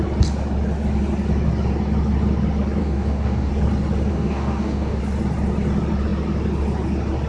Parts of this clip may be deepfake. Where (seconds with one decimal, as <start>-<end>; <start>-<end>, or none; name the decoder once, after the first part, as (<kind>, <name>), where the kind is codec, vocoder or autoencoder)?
2.8-3.5 (codec, DAC); 4.1-5.0